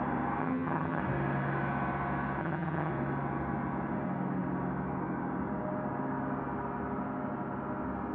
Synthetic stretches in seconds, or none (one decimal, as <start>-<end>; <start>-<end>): 0.4-1.0; 2.4-2.9